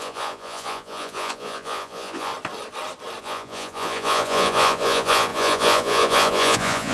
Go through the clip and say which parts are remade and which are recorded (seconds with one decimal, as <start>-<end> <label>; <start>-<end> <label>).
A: 0.0-2.3 remade; 2.3-3.2 recorded; 3.2-6.9 remade